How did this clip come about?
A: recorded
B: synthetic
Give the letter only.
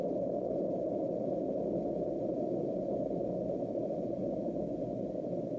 A